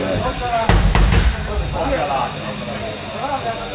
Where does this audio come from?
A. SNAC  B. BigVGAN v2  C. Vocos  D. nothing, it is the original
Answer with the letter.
D